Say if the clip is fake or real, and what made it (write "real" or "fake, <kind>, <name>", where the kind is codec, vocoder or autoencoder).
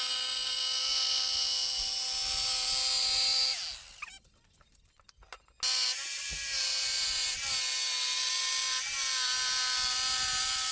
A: real